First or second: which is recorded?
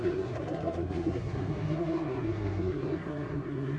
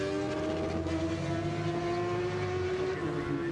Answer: second